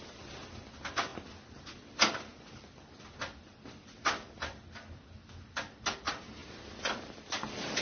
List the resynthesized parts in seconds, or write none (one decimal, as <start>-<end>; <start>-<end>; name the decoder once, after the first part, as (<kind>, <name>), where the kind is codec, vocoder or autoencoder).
none